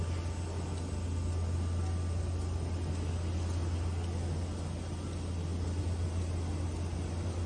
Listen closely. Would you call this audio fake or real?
real